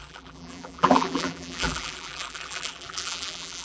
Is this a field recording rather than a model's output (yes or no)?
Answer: no